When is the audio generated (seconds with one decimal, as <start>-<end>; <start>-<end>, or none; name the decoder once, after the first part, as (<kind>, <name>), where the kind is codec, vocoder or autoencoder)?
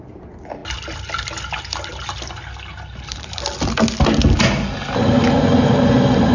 2.7-3.4 (vocoder, BigVGAN v2)